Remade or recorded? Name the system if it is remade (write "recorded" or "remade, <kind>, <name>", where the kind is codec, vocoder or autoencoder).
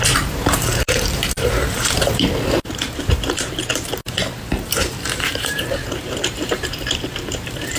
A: remade, vocoder, BigVGAN v2